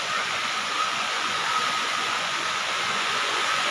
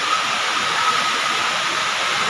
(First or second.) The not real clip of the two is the first